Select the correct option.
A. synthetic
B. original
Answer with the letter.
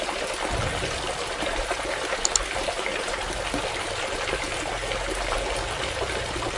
B